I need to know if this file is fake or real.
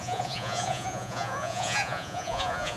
fake